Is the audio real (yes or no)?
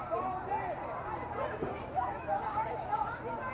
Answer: yes